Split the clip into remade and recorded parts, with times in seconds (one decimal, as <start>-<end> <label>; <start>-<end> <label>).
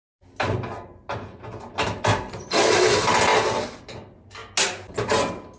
0.0-2.1 recorded; 2.1-2.8 remade; 2.8-5.6 recorded